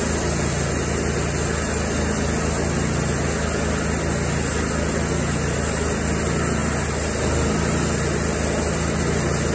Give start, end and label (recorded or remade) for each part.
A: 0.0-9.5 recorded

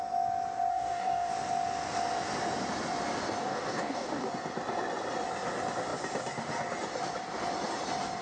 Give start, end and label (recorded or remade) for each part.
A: 0.0-0.7 recorded; 0.7-1.3 remade; 1.3-3.4 recorded; 3.4-4.3 remade; 4.3-8.2 recorded

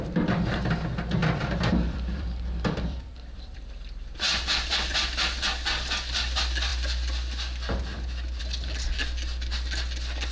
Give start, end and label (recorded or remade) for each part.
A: 0.0-1.2 recorded; 1.2-3.7 remade; 3.7-10.3 recorded

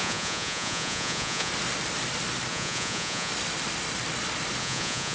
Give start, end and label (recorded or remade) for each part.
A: 0.0-1.5 remade; 1.5-2.5 recorded; 2.5-3.3 remade; 3.3-4.6 recorded; 4.6-5.1 remade

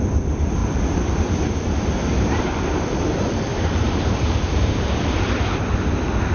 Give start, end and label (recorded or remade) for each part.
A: 0.0-0.6 remade; 0.6-2.4 recorded; 2.4-6.3 remade